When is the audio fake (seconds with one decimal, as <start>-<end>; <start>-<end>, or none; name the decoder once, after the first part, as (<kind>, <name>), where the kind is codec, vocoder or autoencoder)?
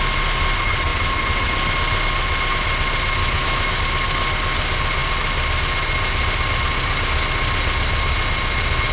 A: 3.2-3.8 (autoencoder, DAC-VAE)